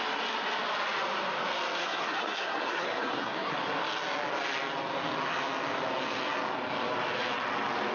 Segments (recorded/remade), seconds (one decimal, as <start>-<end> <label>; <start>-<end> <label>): 0.0-1.8 recorded; 1.8-3.5 remade; 3.5-7.9 recorded